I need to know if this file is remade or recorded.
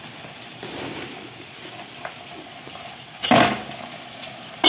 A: recorded